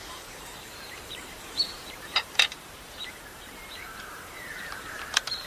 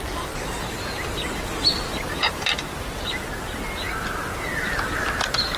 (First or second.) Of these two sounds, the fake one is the first